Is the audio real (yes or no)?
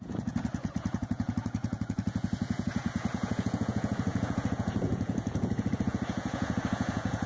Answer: no